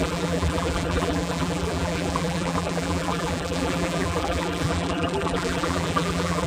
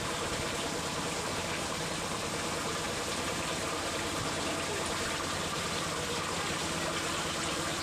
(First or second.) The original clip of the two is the second